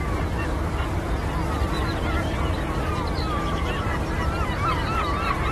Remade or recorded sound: recorded